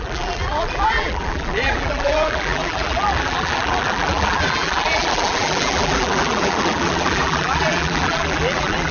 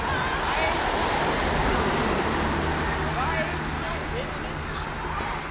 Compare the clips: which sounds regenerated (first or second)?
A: first